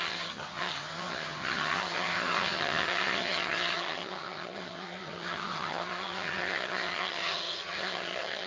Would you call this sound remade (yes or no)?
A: yes